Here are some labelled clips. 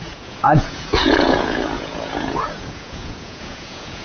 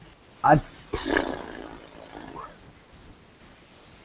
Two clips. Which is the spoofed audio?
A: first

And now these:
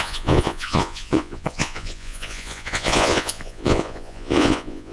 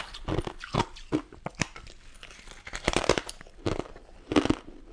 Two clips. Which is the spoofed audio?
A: first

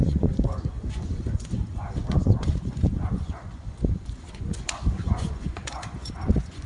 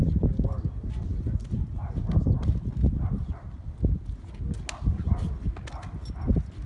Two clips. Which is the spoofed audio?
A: first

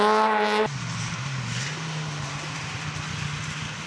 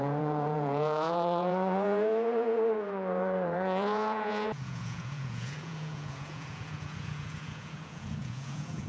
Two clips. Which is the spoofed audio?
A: second